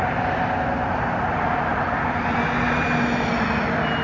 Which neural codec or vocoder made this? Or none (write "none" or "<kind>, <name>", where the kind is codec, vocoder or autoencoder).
none